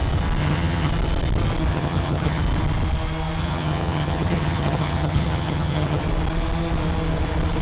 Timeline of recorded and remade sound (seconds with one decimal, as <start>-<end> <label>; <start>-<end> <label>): 0.0-0.4 recorded; 0.4-0.9 remade; 0.9-1.7 recorded; 1.7-2.4 remade; 2.4-3.4 recorded; 3.4-6.0 remade; 6.0-7.6 recorded